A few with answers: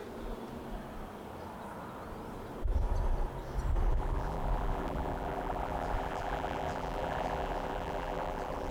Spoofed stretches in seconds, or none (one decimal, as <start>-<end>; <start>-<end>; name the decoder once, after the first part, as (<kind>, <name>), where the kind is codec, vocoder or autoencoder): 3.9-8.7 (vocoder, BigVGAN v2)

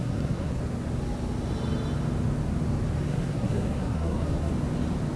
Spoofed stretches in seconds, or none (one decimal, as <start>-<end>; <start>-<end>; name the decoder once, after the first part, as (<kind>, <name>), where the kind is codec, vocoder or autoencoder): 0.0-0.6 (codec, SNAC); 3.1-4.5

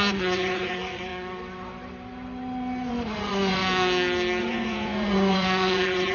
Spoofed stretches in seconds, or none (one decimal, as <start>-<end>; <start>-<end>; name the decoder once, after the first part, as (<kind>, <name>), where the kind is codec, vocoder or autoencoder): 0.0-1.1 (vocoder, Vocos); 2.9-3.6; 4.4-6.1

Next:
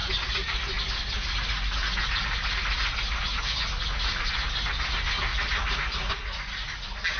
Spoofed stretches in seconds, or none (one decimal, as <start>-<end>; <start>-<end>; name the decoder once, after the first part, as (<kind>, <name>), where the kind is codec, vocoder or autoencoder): none

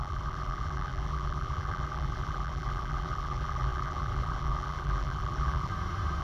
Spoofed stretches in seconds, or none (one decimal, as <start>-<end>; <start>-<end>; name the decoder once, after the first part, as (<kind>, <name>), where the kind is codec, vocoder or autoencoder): 0.0-5.7 (vocoder, BigVGAN v2)